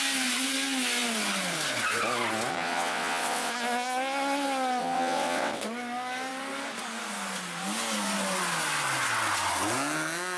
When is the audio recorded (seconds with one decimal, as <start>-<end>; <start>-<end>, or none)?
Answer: 0.0-2.5; 3.5-4.8; 5.6-10.4